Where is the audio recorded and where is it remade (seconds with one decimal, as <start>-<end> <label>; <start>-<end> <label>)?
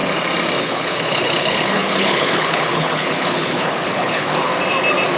0.0-0.6 recorded; 0.6-4.5 remade; 4.5-5.2 recorded